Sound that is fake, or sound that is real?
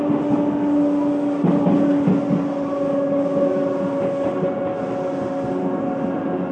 real